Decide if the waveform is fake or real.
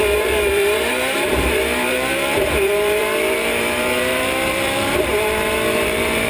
fake